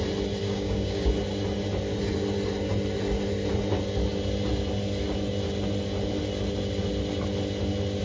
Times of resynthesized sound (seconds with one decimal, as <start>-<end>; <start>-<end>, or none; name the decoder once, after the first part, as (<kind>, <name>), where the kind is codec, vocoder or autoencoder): 0.4-1.1 (codec, DAC)

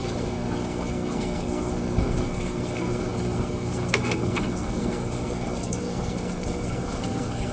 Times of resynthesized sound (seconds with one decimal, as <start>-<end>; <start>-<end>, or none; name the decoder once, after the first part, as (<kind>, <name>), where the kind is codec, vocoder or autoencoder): 0.0-7.5 (codec, SNAC)

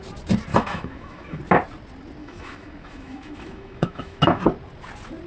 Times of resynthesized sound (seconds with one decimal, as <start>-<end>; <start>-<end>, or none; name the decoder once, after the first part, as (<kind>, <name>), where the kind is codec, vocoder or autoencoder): 0.5-1.4 (autoencoder, DAC-VAE); 2.2-4.4

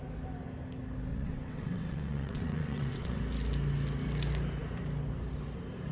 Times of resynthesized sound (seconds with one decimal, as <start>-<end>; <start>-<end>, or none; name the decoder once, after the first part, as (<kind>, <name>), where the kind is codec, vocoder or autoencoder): 1.1-3.2 (vocoder, WaveNeXt)

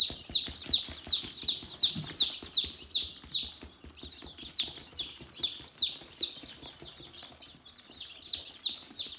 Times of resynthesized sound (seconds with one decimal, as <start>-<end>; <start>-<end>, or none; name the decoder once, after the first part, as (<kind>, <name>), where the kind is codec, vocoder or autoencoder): none

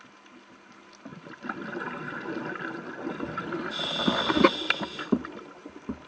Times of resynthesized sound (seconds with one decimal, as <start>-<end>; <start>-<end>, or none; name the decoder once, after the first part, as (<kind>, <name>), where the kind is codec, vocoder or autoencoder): none

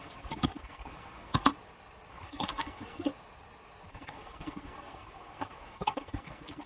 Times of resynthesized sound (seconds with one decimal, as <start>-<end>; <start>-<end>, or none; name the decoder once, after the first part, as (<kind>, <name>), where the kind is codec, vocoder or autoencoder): 0.0-1.5 (codec, SNAC); 2.1-3.1; 3.9-6.7

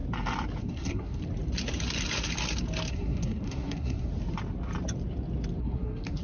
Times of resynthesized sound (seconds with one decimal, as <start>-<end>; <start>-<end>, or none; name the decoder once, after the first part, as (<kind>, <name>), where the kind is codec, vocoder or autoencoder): 0.6-1.2 (codec, SNAC); 2.9-4.1; 5.6-6.2